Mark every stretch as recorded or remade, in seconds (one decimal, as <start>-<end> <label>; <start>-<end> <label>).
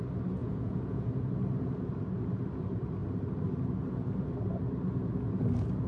0.0-0.4 recorded; 0.4-1.1 remade; 1.1-5.9 recorded